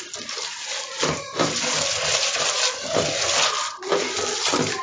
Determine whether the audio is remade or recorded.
recorded